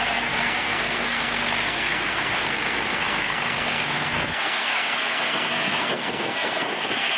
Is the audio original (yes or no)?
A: no